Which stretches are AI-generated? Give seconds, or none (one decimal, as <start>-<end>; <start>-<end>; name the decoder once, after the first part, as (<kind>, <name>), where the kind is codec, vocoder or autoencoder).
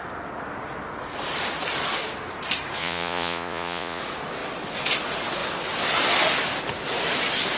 2.8-4.0 (vocoder, Vocos)